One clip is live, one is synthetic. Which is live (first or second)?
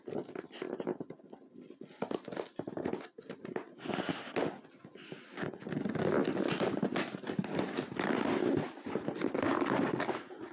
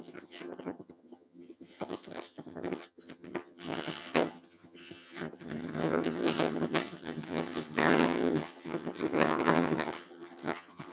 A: first